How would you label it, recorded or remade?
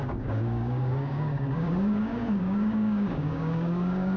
remade